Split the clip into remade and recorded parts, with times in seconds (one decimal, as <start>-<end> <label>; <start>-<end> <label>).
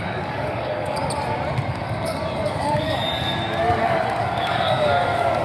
0.0-1.0 remade; 1.0-1.7 recorded; 1.7-3.0 remade; 3.0-3.7 recorded; 3.7-5.4 remade